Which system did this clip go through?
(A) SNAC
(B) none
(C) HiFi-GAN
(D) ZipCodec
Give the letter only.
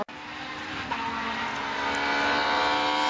B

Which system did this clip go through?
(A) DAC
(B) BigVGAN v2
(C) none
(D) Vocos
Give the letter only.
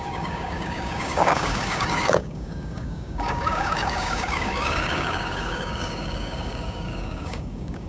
A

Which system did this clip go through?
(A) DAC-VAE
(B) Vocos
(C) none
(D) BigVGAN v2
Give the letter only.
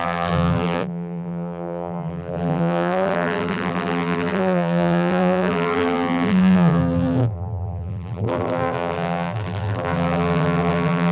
D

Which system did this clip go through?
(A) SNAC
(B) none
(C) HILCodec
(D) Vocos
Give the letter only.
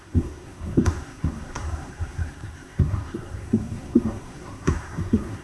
A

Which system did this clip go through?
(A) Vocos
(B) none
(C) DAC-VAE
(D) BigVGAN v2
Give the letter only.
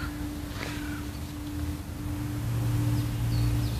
B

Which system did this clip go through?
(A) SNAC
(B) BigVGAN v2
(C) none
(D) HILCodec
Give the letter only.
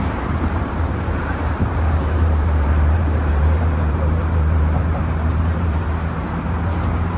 B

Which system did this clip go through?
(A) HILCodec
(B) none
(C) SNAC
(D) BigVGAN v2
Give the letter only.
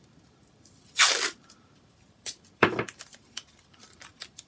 D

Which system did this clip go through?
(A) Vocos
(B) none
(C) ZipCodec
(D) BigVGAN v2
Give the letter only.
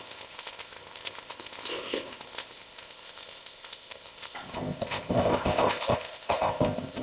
C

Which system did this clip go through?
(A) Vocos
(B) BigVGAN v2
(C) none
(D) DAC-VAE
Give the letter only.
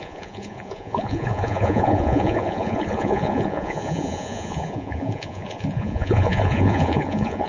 A